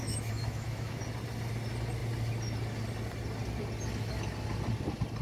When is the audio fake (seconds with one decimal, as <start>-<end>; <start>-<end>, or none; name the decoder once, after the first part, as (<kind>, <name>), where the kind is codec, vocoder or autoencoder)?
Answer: 0.0-1.0 (autoencoder, DAC-VAE)